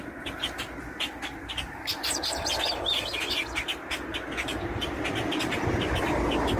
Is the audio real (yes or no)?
yes